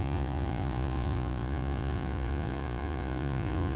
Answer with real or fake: fake